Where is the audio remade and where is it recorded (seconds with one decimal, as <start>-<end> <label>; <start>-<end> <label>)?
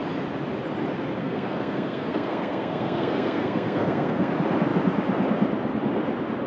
0.0-1.2 recorded; 1.2-4.3 remade; 4.3-6.5 recorded